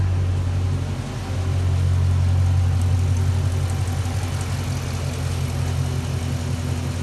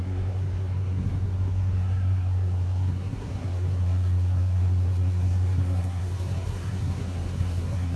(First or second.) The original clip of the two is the first